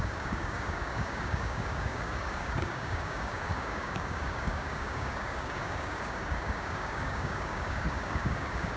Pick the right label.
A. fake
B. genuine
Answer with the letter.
A